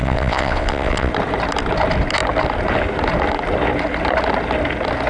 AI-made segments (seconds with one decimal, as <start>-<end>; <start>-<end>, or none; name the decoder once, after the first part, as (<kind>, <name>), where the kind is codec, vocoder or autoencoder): 0.0-1.1 (vocoder, WaveNeXt)